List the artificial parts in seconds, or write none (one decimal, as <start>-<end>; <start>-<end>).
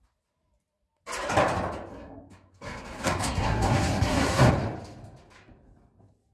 1.9-4.5